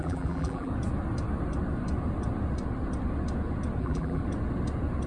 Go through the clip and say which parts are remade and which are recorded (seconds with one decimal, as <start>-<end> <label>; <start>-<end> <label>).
0.0-0.7 remade; 0.7-3.8 recorded; 3.8-4.2 remade; 4.2-5.1 recorded